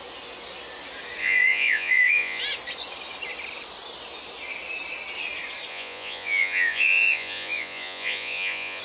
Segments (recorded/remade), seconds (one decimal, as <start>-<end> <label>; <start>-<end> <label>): 0.0-1.2 recorded; 1.2-2.4 remade; 2.4-5.7 recorded; 5.7-8.8 remade